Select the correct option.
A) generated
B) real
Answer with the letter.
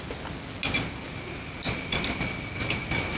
B